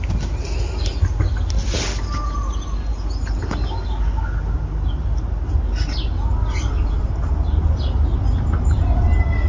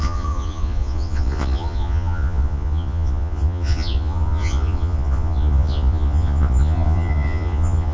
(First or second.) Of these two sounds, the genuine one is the first